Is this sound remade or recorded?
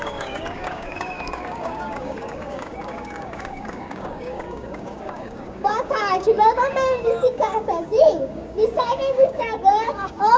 remade